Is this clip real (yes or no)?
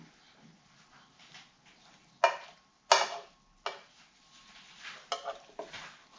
yes